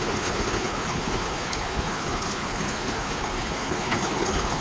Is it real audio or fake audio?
fake